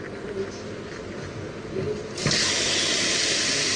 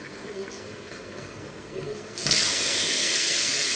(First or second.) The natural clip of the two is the first